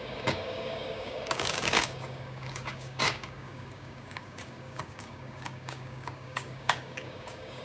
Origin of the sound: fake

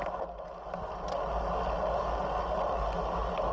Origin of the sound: real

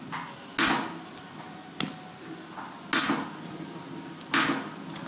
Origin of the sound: real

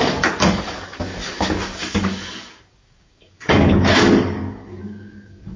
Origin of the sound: fake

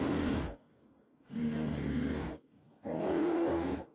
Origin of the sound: fake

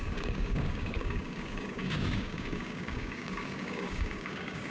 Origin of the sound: fake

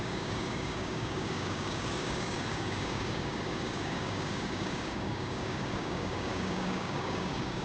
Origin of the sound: fake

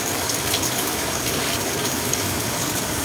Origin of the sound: fake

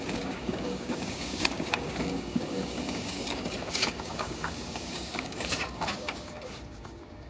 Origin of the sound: fake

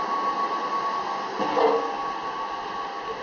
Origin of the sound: real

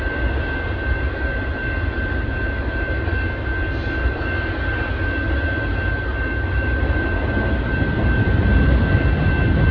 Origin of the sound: real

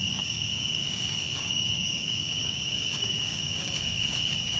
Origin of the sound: fake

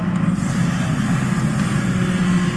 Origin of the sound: real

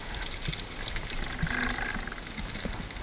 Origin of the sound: real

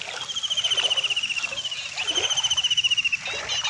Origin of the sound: real